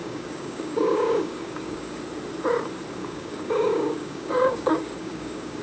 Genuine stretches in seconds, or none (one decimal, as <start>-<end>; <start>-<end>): 2.0-3.0